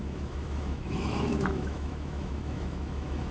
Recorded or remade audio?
remade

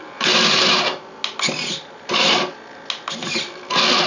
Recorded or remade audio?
recorded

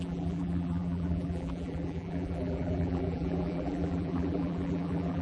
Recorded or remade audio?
remade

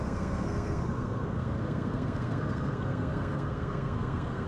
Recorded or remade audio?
remade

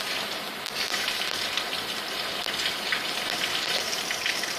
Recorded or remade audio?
recorded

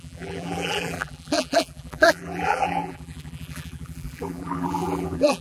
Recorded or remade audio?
remade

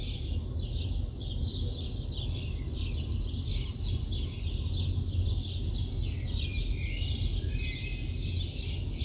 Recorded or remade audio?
recorded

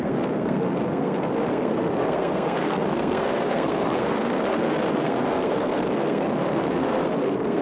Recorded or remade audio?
remade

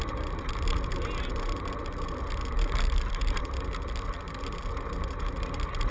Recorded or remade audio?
recorded